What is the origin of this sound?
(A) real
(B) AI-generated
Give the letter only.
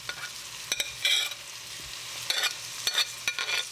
A